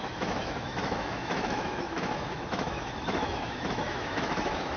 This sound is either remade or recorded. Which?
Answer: remade